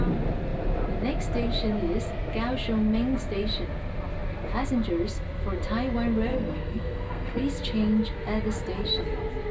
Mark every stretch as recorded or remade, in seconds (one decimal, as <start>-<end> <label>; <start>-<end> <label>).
0.0-6.3 recorded; 6.3-7.4 remade; 7.4-9.5 recorded